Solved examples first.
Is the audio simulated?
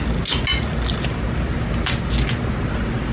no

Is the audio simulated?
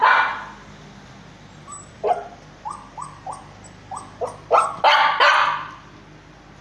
no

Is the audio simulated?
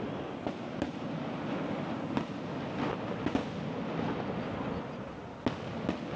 no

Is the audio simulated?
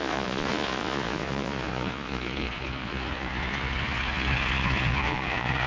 yes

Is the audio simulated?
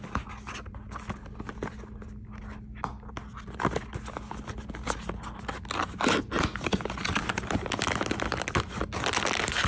no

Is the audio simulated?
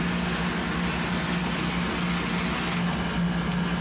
no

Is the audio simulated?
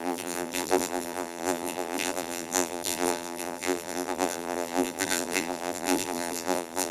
yes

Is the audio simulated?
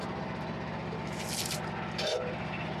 no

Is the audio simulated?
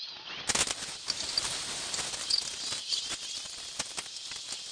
no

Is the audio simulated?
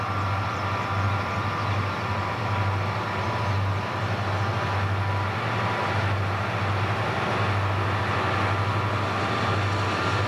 no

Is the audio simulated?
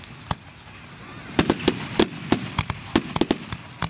no